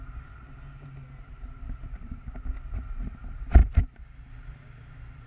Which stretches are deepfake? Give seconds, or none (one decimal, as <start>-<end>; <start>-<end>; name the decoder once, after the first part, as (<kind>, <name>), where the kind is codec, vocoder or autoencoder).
none